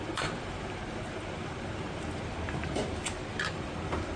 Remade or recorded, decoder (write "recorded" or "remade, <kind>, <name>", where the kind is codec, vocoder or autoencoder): remade, vocoder, BigVGAN v2